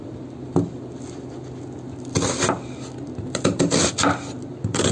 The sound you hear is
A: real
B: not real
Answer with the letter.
B